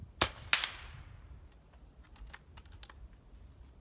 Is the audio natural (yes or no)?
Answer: yes